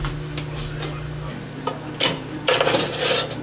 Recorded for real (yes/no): yes